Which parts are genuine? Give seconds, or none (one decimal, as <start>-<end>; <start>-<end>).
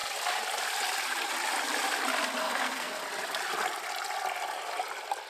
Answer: 0.0-2.4; 3.0-5.3